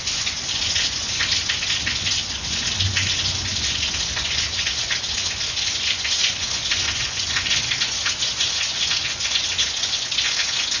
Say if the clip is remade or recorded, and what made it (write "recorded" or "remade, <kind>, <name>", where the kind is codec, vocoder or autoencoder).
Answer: remade, vocoder, Vocos